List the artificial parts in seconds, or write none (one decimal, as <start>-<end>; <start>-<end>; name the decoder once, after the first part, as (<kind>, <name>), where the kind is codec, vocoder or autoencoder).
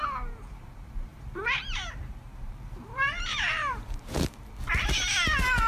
1.1-4.5 (vocoder, BigVGAN v2)